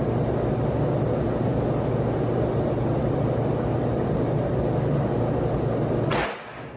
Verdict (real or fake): real